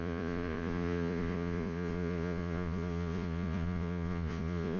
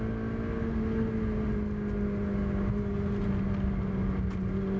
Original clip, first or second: second